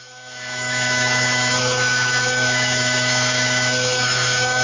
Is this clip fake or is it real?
fake